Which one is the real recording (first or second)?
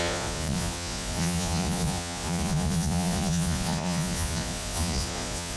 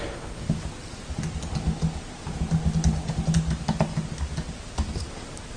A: second